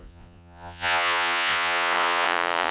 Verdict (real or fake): fake